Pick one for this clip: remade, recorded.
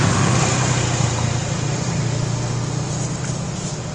recorded